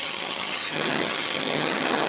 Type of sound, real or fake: fake